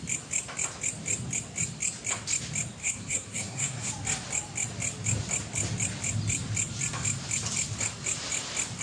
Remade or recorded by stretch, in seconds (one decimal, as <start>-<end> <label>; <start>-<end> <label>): 0.0-2.8 recorded; 2.8-3.9 remade; 3.9-8.8 recorded

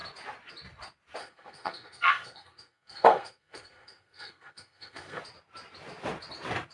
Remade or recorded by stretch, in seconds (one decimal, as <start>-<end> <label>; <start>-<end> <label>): 0.0-1.2 recorded; 1.2-5.2 remade; 5.2-6.7 recorded

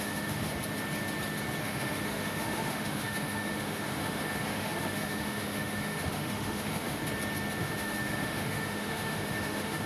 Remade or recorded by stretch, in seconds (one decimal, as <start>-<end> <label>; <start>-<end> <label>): 0.0-0.5 remade; 0.5-1.6 recorded; 1.6-7.0 remade; 7.0-7.6 recorded; 7.6-9.9 remade

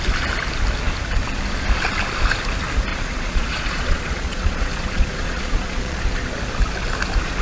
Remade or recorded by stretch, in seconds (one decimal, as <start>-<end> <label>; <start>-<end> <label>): 0.0-2.9 recorded; 2.9-6.0 remade; 6.0-7.4 recorded

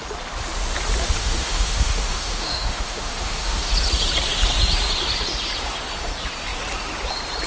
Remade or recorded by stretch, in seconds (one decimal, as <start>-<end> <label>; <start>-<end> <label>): 0.0-1.2 recorded; 1.2-3.7 remade; 3.7-7.5 recorded

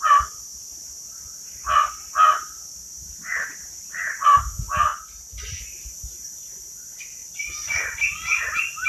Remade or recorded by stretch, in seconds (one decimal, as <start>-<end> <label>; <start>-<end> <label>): 0.0-8.9 recorded

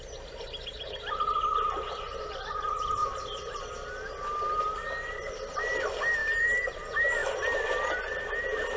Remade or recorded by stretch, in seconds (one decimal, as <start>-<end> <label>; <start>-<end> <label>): 0.0-6.2 recorded; 6.2-6.8 remade; 6.8-7.2 recorded; 7.2-8.2 remade; 8.2-8.8 recorded

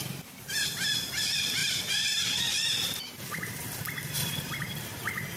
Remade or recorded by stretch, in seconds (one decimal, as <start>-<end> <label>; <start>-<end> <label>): 0.0-5.4 remade